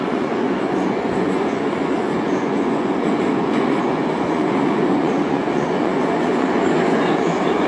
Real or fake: fake